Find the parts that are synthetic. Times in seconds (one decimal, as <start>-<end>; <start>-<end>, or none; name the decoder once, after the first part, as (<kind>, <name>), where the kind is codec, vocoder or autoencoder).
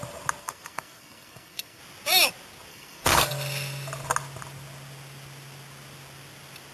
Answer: 0.4-1.8 (codec, SNAC); 2.7-3.3